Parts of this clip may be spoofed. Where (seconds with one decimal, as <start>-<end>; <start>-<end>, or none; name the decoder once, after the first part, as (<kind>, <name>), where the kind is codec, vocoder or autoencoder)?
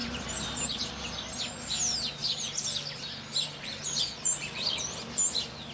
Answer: 0.0-0.9 (vocoder, BigVGAN v2); 2.2-5.7